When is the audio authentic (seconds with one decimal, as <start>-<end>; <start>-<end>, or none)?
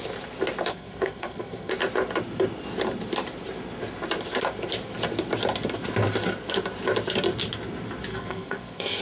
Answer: 0.0-0.7; 1.7-8.1